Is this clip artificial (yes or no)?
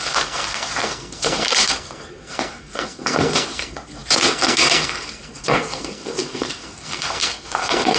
yes